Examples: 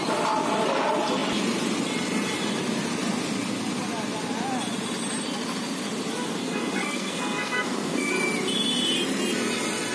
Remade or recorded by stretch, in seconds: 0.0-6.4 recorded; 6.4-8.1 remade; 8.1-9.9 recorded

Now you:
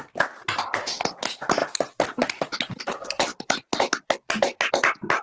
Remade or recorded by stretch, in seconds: 0.0-1.6 recorded; 1.6-4.7 remade; 4.7-5.2 recorded

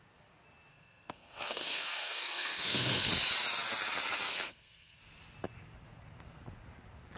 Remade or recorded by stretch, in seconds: 0.0-0.7 recorded; 0.7-3.1 remade; 3.1-4.3 recorded; 4.3-5.0 remade; 5.0-7.2 recorded